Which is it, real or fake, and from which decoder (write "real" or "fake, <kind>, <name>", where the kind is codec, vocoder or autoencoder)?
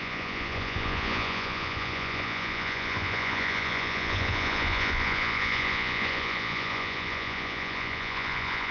fake, vocoder, Vocos